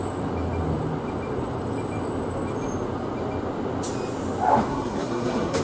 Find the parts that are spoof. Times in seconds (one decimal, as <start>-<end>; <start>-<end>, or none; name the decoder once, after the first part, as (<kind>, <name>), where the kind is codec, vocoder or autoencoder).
4.7-5.6 (codec, SNAC)